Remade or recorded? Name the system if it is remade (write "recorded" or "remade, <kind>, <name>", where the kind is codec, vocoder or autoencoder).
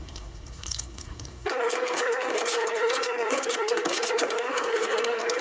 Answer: remade, codec, SNAC